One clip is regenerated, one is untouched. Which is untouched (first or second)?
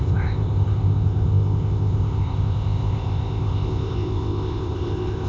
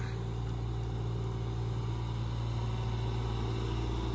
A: second